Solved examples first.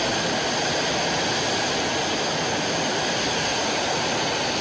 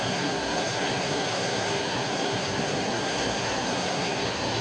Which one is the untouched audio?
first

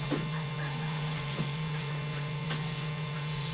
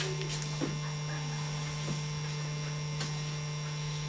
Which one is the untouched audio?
second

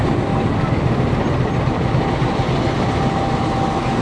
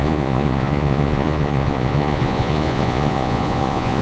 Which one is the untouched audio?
first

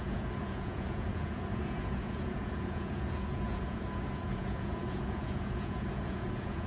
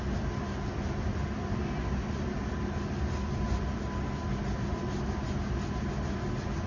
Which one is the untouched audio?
second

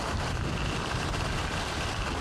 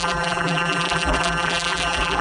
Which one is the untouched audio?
first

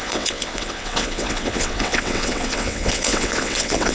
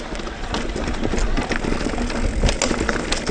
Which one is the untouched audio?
second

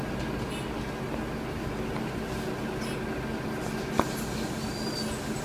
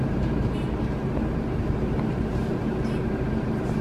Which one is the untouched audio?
first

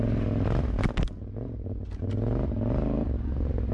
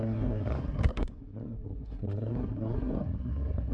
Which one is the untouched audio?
first